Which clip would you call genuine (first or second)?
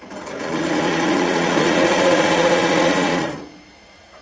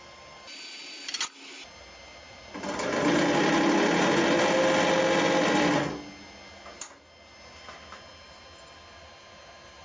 second